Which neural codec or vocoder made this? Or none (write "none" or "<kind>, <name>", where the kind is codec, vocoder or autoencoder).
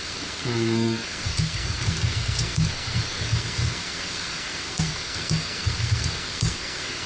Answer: codec, SNAC